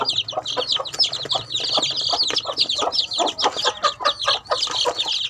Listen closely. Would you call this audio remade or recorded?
recorded